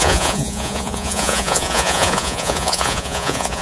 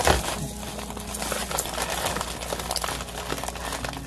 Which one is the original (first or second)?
second